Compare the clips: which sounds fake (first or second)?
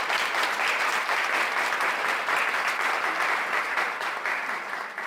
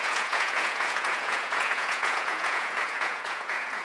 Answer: second